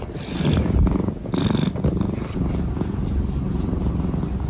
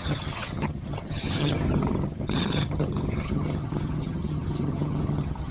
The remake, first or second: second